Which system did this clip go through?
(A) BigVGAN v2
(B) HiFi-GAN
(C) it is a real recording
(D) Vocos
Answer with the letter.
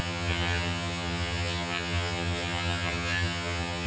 B